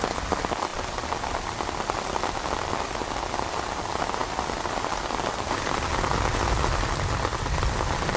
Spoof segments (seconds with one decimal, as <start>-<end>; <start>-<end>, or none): none